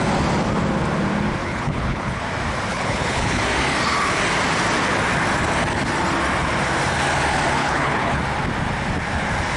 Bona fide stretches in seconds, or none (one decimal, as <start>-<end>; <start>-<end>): 0.0-1.4; 2.2-2.7; 3.4-7.6; 8.2-9.6